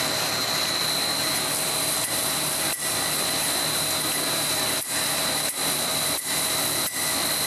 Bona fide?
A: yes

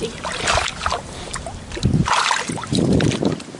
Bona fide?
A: yes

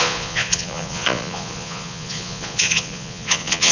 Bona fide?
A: no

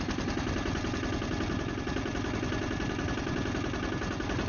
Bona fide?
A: yes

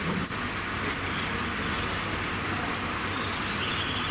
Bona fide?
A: yes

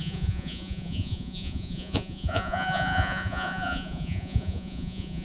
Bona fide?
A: no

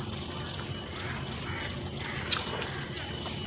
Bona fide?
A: yes